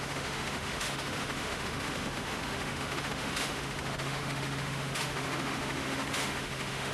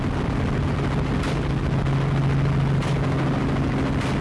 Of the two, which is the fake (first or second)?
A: first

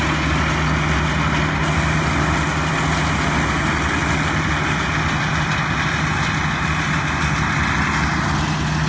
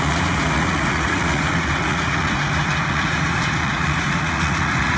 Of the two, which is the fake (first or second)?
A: second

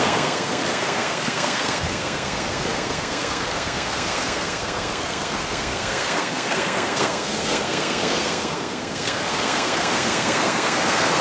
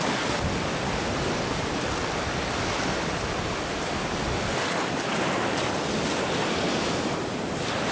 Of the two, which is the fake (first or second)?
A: first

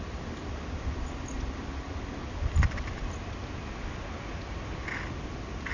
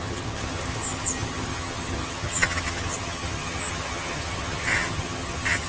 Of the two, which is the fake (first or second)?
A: second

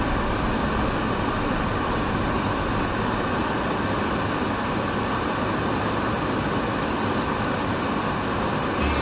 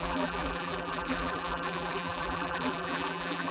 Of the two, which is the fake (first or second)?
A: second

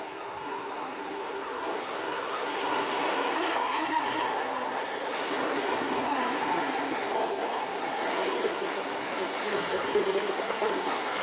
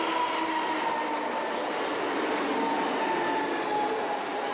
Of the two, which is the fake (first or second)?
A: first